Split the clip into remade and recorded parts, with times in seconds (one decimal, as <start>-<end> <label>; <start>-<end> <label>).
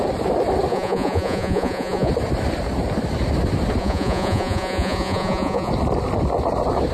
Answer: 0.0-0.7 recorded; 0.7-2.1 remade; 2.1-3.8 recorded; 3.8-5.7 remade; 5.7-6.9 recorded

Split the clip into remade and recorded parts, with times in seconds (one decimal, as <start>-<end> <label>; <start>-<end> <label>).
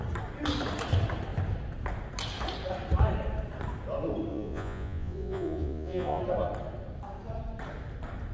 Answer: 0.0-4.3 recorded; 4.3-6.2 remade; 6.2-8.3 recorded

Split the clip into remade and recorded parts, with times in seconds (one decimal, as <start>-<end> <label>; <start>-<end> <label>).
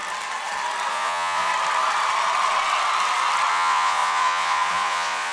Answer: 0.0-0.9 recorded; 0.9-1.5 remade; 1.5-3.5 recorded; 3.5-5.3 remade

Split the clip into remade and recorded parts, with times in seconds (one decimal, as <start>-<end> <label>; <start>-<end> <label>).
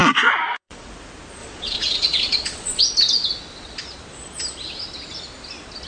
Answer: 0.0-0.9 remade; 0.9-1.4 recorded; 1.4-2.8 remade; 2.8-5.9 recorded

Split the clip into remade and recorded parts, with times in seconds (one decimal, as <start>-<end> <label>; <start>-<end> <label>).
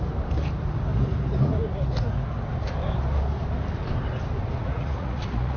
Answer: 0.0-4.6 recorded; 4.6-5.6 remade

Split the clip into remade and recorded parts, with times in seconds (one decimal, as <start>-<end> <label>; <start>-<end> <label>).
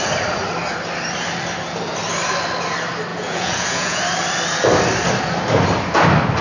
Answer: 0.0-3.1 recorded; 3.1-4.0 remade; 4.0-6.4 recorded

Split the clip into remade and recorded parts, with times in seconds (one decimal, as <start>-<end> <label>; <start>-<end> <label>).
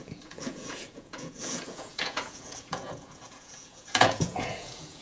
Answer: 0.0-5.0 remade